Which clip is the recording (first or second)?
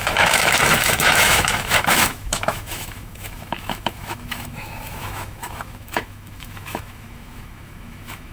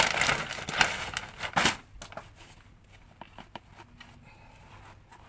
second